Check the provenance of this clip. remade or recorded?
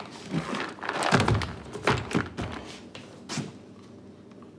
recorded